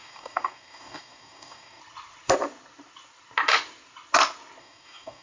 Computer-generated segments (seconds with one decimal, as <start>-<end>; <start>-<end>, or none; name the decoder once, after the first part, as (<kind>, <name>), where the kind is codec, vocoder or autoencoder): 0.0-1.8 (codec, DAC); 4.6-5.2